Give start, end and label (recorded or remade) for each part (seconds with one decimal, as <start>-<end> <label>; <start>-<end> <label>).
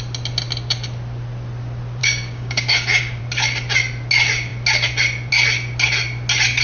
0.0-2.0 recorded; 2.0-3.2 remade; 3.2-6.6 recorded